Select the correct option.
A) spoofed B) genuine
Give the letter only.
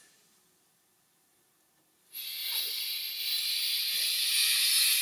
B